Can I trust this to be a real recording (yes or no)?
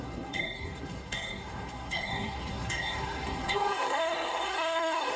no